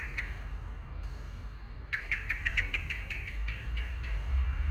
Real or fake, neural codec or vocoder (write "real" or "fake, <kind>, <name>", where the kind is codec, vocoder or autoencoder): fake, codec, DAC